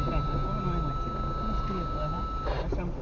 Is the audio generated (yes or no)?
no